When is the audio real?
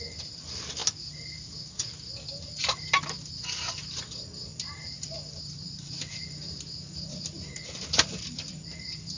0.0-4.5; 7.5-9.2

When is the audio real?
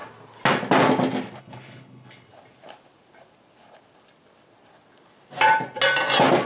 0.0-1.4; 2.3-6.5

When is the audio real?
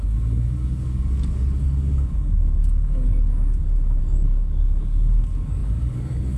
3.1-4.0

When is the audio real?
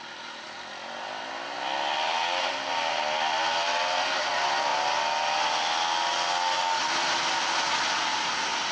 0.0-8.7